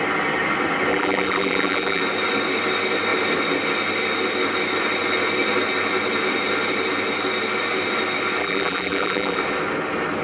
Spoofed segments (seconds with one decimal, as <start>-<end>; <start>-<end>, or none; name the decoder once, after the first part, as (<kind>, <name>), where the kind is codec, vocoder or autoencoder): 0.9-2.0 (vocoder, BigVGAN v2); 8.4-9.4